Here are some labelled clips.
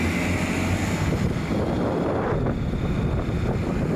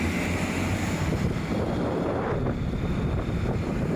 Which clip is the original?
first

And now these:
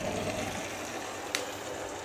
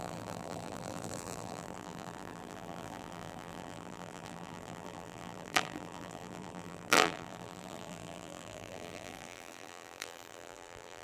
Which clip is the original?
first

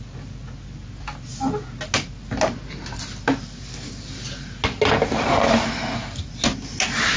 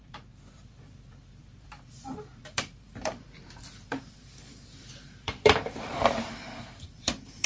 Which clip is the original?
first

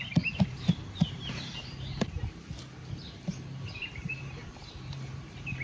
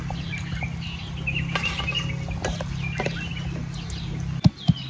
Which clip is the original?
second